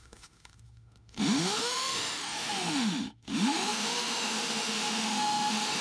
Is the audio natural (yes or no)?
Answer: no